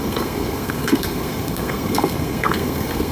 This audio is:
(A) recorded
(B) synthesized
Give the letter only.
B